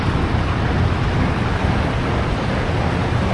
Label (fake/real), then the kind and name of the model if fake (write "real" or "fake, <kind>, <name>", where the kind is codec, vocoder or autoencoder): real